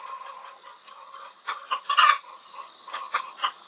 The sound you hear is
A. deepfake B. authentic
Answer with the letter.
A